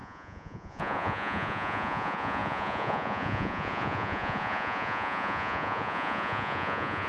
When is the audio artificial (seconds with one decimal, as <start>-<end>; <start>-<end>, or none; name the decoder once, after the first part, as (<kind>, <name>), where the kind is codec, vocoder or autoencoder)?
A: 0.0-7.1 (vocoder, Vocos)